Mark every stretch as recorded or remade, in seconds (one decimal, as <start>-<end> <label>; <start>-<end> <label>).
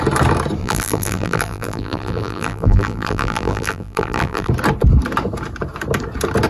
0.0-0.6 recorded; 0.6-4.5 remade; 4.5-6.5 recorded